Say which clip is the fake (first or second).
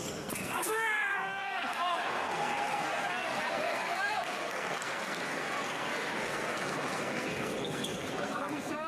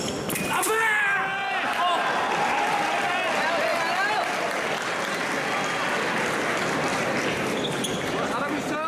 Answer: first